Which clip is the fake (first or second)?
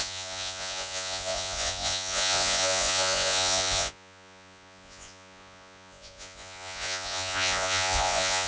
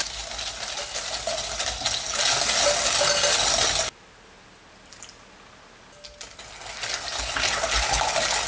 first